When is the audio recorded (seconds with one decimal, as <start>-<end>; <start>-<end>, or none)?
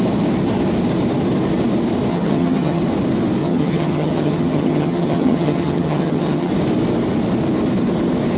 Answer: 0.0-2.1; 2.8-3.4; 6.5-8.4